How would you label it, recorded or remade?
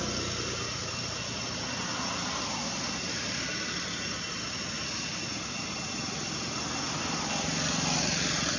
recorded